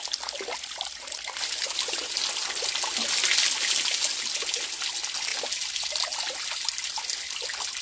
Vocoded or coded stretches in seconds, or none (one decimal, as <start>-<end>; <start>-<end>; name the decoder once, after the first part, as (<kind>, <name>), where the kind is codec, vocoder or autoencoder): none